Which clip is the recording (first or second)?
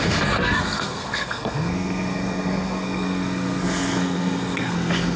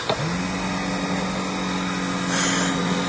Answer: second